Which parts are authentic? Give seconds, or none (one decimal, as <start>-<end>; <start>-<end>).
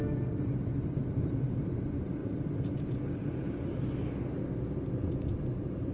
0.0-0.7; 1.2-5.9